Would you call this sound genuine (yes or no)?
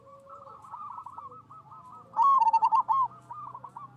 yes